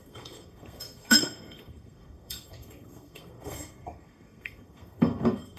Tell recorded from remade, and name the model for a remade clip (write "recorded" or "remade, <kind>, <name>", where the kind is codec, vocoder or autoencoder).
remade, codec, SNAC